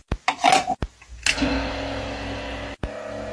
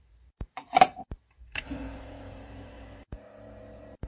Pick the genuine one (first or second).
first